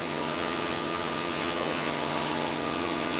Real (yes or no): no